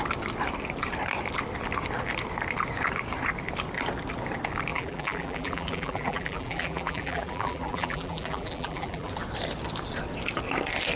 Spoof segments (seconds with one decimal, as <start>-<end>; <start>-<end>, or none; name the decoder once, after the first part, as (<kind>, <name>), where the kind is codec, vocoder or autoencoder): 4.7-9.1 (vocoder, BigVGAN v2)